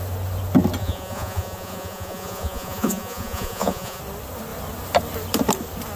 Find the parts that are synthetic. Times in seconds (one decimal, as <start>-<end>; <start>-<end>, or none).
0.8-4.0